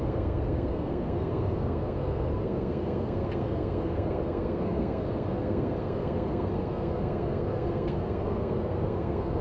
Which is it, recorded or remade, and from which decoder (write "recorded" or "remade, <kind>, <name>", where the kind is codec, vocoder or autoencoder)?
remade, codec, SNAC